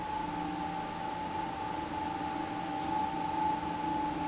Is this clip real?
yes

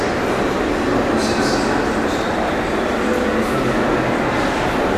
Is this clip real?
yes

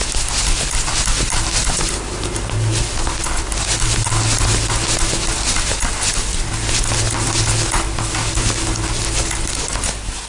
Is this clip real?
yes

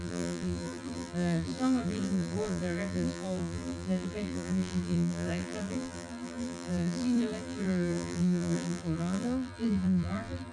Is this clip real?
no